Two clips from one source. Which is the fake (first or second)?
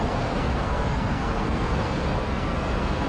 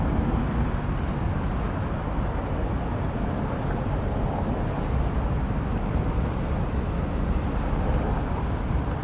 first